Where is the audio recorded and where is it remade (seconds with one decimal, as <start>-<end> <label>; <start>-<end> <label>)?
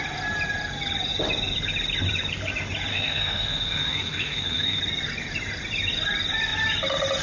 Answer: 0.0-2.9 recorded; 2.9-4.8 remade; 4.8-7.2 recorded